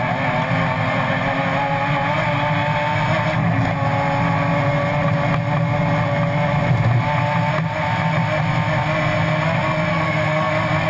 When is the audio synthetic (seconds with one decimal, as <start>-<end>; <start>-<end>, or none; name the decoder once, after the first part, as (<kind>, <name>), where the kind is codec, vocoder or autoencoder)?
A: 9.9-10.5 (codec, SNAC)